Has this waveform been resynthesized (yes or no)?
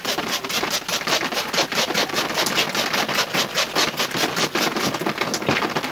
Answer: yes